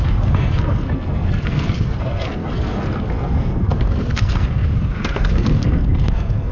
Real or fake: fake